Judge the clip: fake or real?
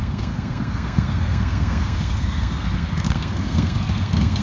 fake